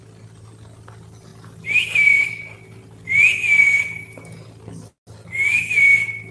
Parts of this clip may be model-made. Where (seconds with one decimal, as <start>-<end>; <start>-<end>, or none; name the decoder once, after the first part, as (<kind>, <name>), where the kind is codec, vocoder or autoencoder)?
none